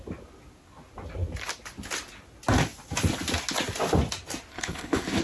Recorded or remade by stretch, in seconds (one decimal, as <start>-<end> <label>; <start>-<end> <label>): 0.0-4.5 recorded; 4.5-5.2 remade